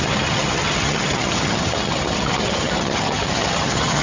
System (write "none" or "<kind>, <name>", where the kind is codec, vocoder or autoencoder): vocoder, HiFi-GAN